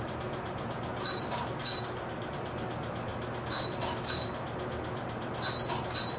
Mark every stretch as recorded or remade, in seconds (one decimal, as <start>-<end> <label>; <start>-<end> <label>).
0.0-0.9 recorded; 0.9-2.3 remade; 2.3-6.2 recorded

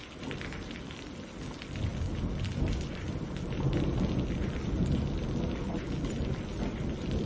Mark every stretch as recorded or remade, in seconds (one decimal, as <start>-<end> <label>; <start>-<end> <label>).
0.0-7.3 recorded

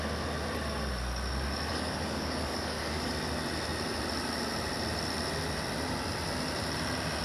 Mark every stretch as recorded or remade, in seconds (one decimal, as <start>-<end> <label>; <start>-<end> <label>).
0.0-1.7 recorded; 1.7-3.1 remade; 3.1-7.2 recorded

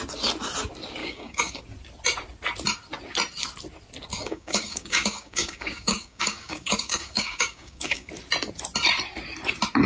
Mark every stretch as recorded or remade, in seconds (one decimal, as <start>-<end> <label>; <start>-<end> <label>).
0.0-1.0 recorded; 1.0-1.6 remade; 1.6-4.1 recorded; 4.1-8.1 remade; 8.1-9.9 recorded

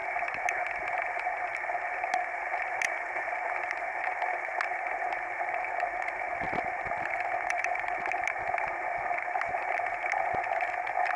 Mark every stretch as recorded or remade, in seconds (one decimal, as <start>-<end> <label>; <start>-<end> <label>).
0.0-11.2 recorded

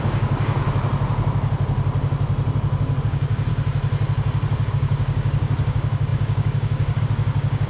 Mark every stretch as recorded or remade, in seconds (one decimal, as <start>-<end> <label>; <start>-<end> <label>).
0.0-0.6 remade; 0.6-3.0 recorded; 3.0-3.5 remade; 3.5-4.7 recorded; 4.7-7.7 remade